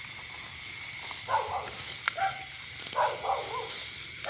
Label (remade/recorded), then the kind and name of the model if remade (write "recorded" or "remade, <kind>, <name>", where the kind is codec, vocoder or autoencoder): recorded